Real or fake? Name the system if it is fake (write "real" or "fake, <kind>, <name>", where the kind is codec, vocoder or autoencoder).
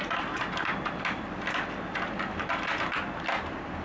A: real